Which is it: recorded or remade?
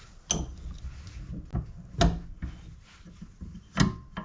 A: recorded